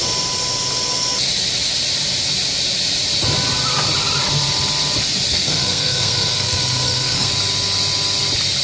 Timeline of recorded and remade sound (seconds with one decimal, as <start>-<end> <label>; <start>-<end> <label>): 0.0-5.3 recorded; 5.3-7.3 remade; 7.3-8.6 recorded